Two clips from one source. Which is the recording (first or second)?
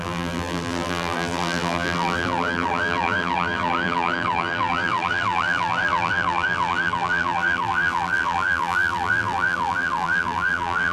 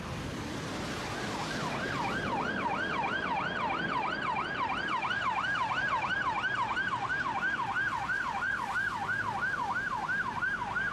second